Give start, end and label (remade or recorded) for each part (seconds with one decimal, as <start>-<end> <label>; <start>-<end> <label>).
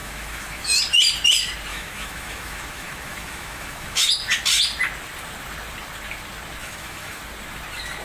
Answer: 0.0-0.8 remade; 0.8-1.7 recorded; 1.7-4.1 remade; 4.1-6.6 recorded; 6.6-7.2 remade; 7.2-8.0 recorded